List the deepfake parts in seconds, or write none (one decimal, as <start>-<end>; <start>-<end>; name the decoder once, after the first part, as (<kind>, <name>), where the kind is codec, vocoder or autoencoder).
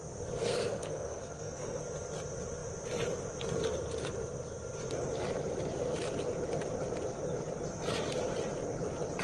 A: 0.4-1.8 (codec, SNAC)